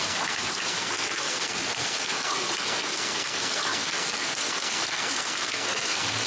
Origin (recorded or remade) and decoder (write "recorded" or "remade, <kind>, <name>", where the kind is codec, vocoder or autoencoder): remade, codec, SNAC